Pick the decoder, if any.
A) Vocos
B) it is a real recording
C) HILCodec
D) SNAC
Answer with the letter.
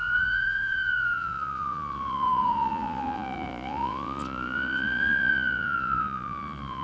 A